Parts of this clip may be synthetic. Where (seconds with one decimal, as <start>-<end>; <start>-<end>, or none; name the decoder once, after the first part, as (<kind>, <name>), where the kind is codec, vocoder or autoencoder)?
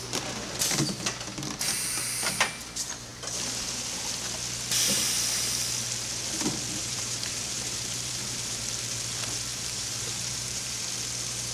6.8-8.6 (vocoder, BigVGAN v2); 9.5-10.8